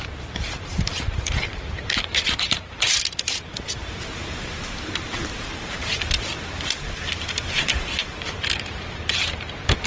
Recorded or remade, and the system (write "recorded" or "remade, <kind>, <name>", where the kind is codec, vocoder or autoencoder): remade, vocoder, BigVGAN v2